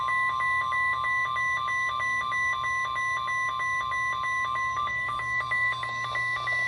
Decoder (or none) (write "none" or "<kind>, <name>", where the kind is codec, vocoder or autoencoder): none